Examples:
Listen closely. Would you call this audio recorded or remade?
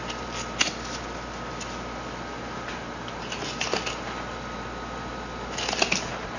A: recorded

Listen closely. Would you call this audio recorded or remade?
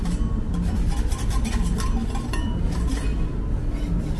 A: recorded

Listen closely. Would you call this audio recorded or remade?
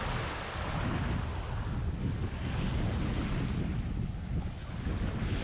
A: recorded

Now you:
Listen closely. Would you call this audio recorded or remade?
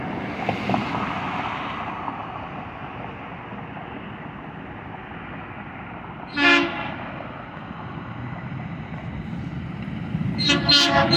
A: recorded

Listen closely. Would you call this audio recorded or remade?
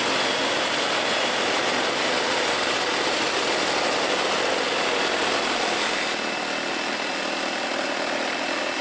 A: recorded